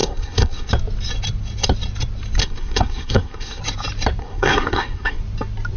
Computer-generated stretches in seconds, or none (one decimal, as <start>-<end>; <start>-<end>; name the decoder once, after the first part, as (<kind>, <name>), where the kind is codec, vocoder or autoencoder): 0.0-0.7 (codec, SNAC); 2.4-3.6; 4.2-5.2